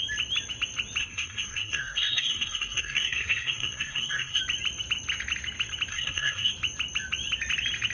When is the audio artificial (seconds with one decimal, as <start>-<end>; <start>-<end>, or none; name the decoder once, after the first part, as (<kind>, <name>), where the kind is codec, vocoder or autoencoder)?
1.0-4.4 (codec, SNAC); 5.9-6.5